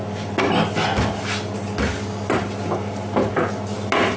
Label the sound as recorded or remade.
recorded